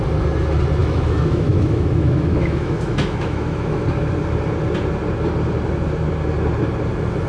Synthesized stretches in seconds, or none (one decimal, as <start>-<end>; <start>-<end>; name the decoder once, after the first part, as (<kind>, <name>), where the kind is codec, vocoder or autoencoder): 0.8-3.8 (autoencoder, DAC-VAE)